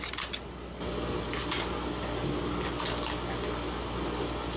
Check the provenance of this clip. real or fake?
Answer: real